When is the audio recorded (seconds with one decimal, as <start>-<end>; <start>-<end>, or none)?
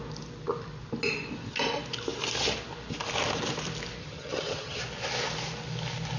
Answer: 0.0-4.0; 4.8-6.2